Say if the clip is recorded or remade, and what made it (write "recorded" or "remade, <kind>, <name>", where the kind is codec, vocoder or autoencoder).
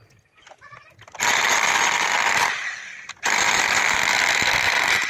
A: recorded